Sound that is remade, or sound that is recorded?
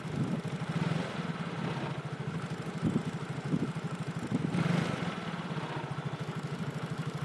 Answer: recorded